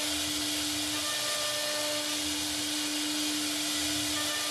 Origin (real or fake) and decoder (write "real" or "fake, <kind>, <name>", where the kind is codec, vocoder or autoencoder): real